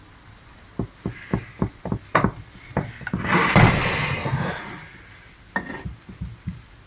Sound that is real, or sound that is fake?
real